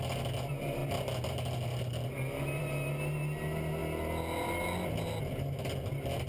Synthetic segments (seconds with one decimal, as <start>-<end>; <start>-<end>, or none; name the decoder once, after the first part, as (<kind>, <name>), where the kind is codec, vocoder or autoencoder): none